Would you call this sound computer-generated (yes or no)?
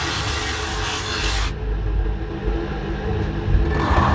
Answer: no